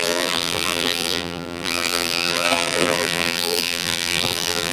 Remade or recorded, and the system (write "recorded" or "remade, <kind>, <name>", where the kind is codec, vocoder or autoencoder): remade, vocoder, BigVGAN v2